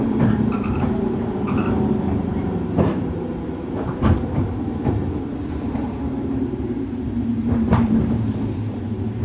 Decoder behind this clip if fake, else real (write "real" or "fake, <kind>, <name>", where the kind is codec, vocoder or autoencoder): fake, vocoder, BigVGAN v2